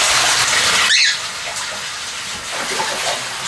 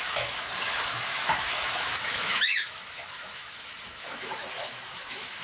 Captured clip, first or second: first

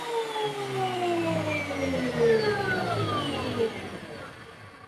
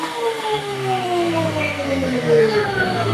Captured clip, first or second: first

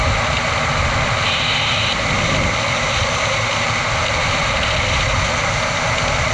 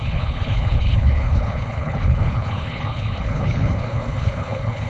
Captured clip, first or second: first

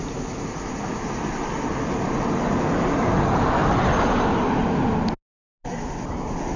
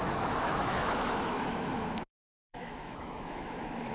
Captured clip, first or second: first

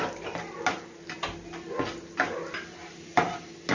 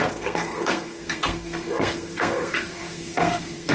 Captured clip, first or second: first